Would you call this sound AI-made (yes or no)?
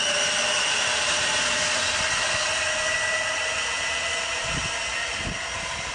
no